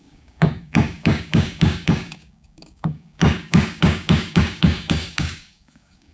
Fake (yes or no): yes